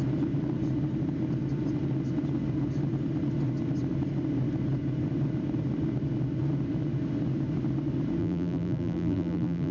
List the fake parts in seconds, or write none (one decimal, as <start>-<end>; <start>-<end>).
8.2-9.7